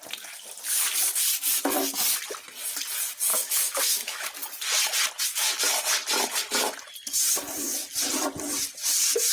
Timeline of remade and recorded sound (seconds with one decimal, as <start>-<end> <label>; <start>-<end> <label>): 0.0-3.3 recorded; 3.3-4.3 remade; 4.3-9.3 recorded